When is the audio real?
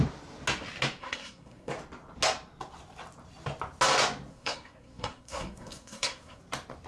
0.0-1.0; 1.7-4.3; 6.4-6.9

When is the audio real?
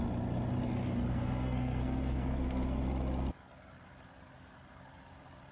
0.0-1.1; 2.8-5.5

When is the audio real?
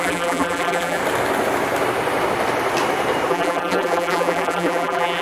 1.0-3.3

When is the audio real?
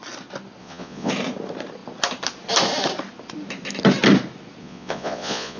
0.0-0.6; 1.1-4.6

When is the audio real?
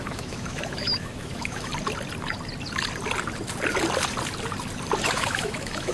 1.7-5.0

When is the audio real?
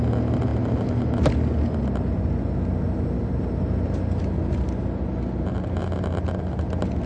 0.0-7.1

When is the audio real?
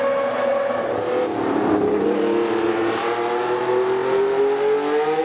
0.0-5.2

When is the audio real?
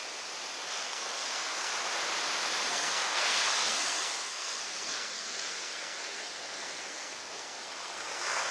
0.0-0.7; 1.7-2.7